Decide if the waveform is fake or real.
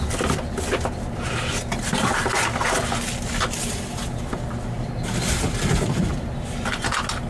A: real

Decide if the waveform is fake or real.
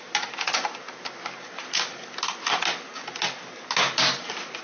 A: real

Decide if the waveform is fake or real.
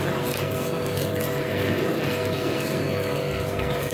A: fake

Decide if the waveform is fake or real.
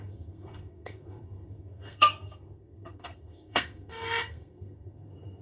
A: fake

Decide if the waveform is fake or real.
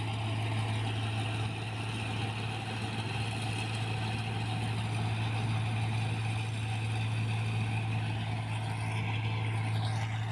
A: real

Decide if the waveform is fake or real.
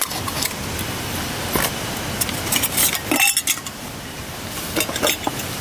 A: real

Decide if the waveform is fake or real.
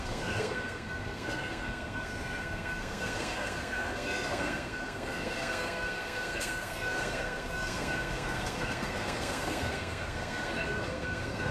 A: fake